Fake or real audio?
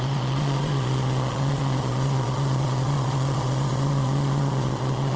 fake